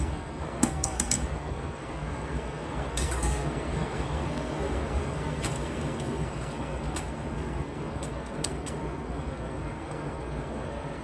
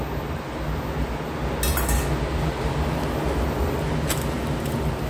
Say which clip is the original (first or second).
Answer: second